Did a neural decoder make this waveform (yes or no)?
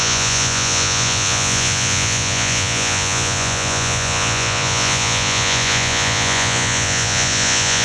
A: yes